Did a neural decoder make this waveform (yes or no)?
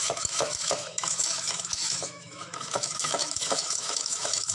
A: yes